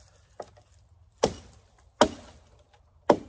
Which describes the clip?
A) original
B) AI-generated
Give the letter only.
A